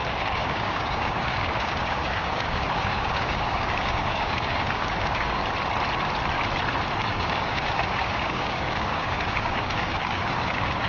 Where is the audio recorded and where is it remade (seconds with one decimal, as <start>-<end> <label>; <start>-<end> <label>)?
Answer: 0.0-5.4 remade; 5.4-7.0 recorded; 7.0-10.9 remade